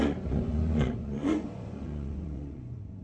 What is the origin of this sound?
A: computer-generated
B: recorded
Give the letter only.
A